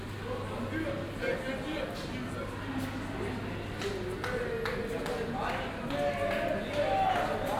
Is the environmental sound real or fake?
real